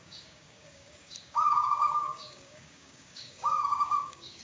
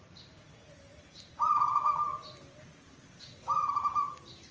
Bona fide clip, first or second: second